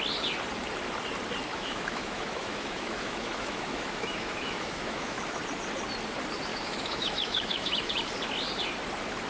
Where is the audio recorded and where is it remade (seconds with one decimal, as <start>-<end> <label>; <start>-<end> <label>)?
0.0-1.5 recorded; 1.5-5.4 remade; 5.4-6.5 recorded; 6.5-8.0 remade; 8.0-9.3 recorded